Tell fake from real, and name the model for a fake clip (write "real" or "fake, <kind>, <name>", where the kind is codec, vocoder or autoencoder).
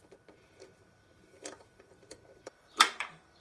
fake, vocoder, BigVGAN v2